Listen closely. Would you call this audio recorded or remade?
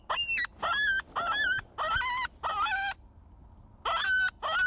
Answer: recorded